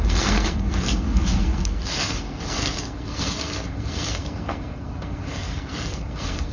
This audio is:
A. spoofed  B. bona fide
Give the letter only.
A